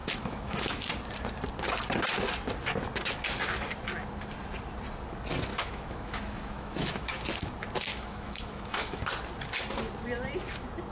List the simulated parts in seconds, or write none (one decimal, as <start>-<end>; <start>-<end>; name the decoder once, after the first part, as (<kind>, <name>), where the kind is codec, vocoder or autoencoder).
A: 0.0-0.8 (autoencoder, DAC-VAE); 5.5-7.2; 7.9-9.0